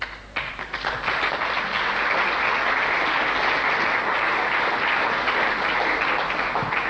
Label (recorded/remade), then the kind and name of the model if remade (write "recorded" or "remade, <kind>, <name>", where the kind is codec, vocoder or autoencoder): recorded